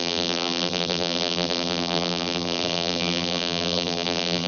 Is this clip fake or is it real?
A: fake